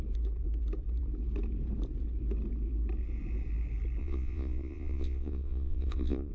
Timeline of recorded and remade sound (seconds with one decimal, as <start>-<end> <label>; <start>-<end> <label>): 0.0-4.0 recorded; 4.0-6.3 remade